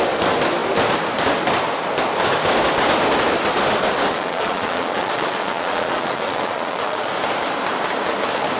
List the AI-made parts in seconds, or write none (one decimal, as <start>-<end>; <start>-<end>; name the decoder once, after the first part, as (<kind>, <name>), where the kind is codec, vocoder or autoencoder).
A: 4.1-7.1 (vocoder, Vocos)